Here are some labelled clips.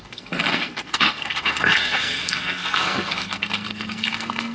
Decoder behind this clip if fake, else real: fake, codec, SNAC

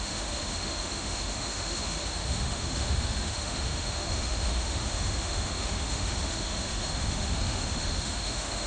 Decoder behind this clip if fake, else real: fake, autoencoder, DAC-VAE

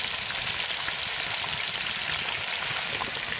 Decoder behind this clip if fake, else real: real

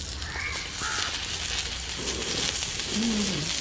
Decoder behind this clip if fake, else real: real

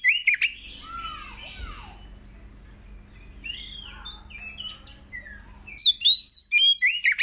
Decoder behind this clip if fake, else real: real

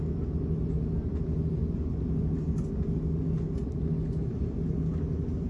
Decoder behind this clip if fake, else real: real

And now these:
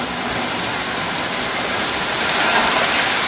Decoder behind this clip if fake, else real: real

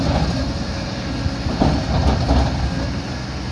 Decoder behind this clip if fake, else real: real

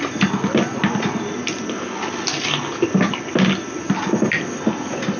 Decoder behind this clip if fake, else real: real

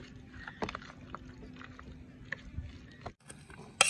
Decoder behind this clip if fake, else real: real